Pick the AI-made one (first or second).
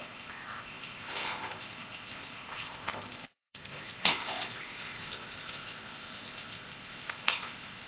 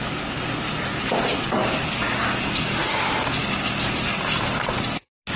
first